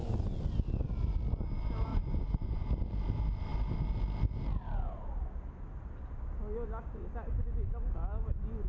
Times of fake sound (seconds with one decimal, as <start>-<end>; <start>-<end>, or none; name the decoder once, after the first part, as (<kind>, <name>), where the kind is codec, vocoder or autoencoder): 1.9-2.7 (vocoder, Vocos)